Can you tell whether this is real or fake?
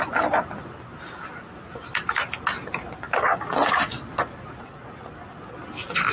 real